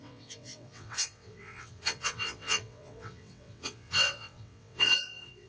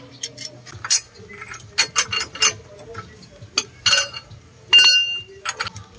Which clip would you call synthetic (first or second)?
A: first